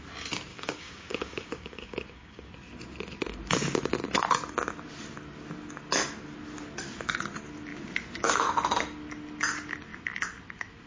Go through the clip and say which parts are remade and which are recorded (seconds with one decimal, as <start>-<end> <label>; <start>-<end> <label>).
0.0-0.5 recorded; 0.5-2.5 remade; 2.5-10.9 recorded